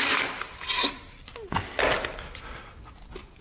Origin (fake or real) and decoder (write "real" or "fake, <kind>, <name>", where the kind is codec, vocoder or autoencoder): real